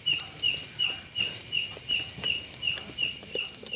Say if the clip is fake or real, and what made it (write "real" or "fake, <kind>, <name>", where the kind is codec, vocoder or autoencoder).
real